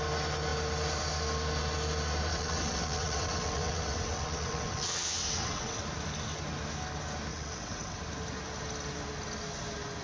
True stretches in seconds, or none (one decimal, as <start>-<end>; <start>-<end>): 0.0-2.3; 5.8-7.3; 8.0-10.0